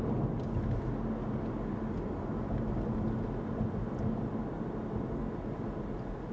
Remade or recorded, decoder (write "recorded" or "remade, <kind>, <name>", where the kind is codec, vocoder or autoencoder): recorded